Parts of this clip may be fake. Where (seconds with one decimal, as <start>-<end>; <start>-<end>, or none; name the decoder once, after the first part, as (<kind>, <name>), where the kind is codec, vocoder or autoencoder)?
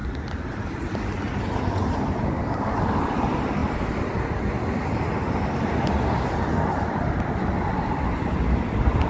2.4-3.0 (codec, DAC)